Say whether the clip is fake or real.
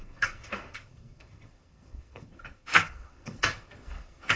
fake